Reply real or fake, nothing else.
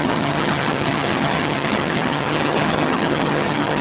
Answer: fake